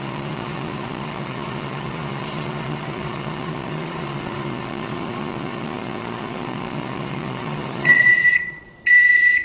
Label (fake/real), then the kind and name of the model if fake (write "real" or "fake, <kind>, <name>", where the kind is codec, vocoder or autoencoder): fake, vocoder, Vocos